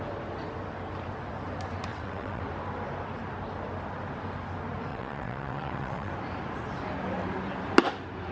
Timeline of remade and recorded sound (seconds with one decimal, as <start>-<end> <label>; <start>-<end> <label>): 0.0-1.9 recorded; 1.9-2.4 remade; 2.4-4.9 recorded; 4.9-6.1 remade; 6.1-8.3 recorded